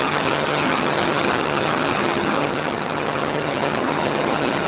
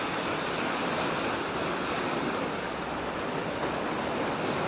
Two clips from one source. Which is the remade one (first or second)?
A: first